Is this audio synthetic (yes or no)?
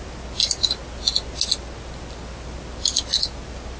no